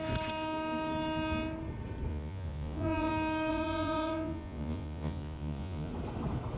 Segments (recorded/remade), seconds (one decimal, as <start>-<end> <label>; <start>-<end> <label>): 0.0-2.1 recorded; 2.1-3.1 remade; 3.1-3.5 recorded; 3.5-5.9 remade; 5.9-6.6 recorded